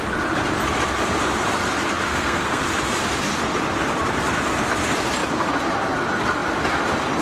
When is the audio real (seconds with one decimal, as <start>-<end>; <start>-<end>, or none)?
0.0-2.1; 2.6-7.2